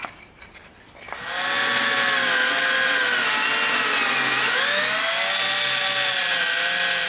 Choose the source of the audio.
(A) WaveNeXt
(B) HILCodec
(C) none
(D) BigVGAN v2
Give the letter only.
C